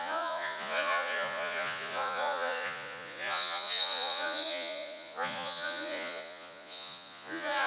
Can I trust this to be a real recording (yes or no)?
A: no